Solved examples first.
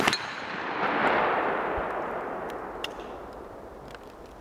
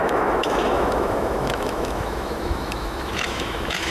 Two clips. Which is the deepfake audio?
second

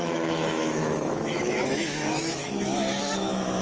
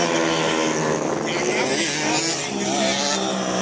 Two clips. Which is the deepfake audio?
first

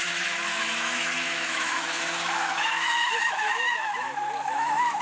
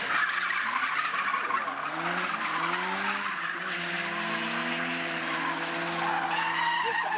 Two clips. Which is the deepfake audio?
first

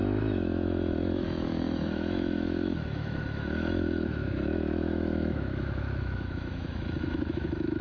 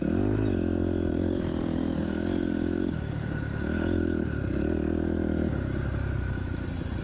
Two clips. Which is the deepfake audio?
first